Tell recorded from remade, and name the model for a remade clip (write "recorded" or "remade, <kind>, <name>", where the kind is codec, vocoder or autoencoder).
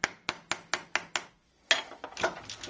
recorded